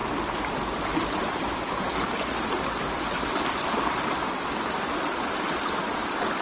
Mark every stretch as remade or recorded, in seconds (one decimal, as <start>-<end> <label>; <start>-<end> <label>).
0.0-6.4 recorded